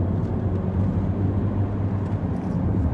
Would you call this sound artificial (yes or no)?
no